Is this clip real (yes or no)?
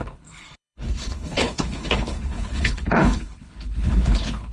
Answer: no